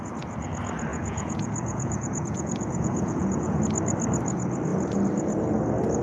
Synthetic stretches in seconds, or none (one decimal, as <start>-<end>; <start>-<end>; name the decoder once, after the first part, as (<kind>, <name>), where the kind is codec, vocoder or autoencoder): 0.9-3.6 (vocoder, Vocos)